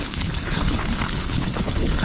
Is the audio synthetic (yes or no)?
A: yes